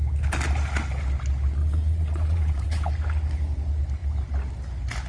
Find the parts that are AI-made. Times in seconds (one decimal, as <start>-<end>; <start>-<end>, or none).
1.6-2.9